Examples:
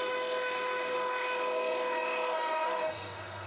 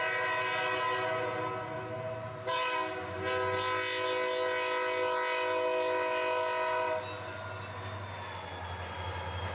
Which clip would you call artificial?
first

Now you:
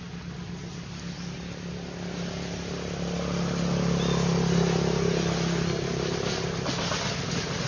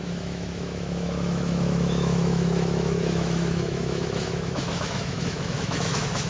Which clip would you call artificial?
second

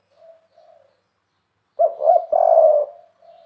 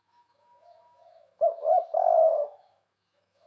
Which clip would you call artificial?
second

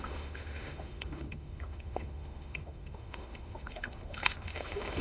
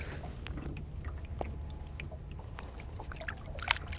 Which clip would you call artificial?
first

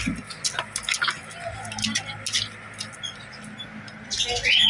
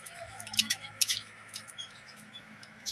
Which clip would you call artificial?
second